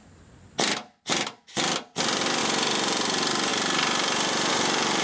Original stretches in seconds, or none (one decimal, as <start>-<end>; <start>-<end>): 0.0-5.0